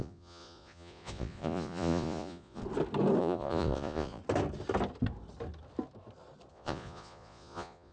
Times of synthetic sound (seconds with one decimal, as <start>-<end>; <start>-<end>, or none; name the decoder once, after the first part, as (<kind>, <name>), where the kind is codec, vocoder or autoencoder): 0.0-2.6 (vocoder, Vocos); 3.2-4.2; 6.5-7.9